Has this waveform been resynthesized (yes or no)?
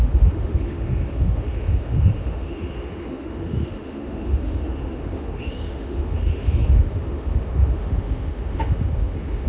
yes